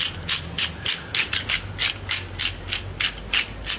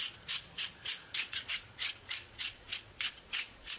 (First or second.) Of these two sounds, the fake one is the second